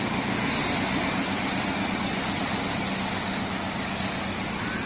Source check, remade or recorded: recorded